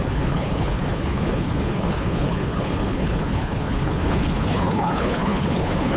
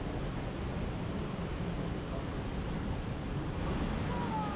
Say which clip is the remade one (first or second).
first